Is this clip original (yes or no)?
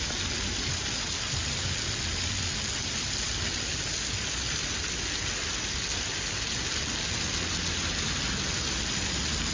yes